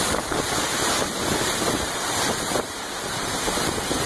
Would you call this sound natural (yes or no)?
no